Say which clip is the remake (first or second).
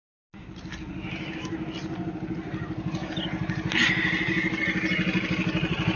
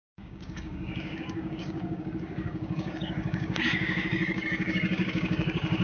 second